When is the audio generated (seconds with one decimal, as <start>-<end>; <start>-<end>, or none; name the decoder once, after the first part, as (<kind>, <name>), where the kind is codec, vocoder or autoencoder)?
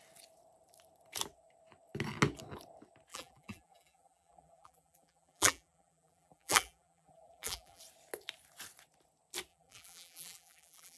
3.1-7.8 (vocoder, BigVGAN v2); 9.5-11.0